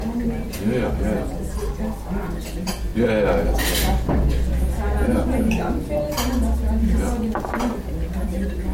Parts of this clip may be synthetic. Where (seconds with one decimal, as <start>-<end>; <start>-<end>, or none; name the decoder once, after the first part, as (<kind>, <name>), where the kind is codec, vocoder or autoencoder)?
none

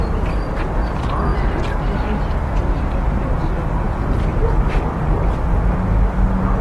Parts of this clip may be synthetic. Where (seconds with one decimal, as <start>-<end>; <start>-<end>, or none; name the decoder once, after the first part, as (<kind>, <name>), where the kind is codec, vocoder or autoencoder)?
none

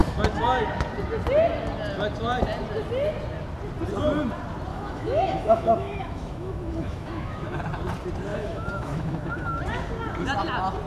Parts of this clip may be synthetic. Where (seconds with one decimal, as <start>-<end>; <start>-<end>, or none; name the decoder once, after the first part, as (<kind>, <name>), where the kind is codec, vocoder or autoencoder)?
4.7-7.6 (autoencoder, DAC-VAE); 8.3-9.6